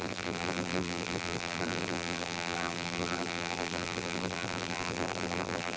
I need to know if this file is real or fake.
fake